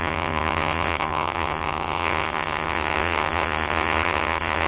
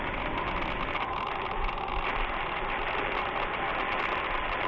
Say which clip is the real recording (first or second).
second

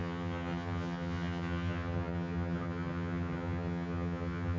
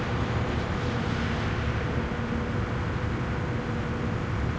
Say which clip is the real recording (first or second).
second